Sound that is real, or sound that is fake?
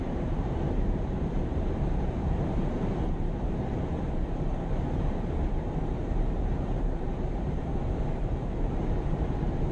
fake